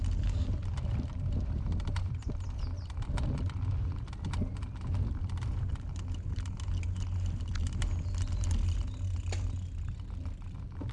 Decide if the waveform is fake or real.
real